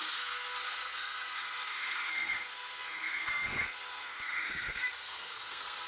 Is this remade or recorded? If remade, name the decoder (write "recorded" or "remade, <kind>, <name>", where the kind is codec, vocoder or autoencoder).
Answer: remade, codec, SNAC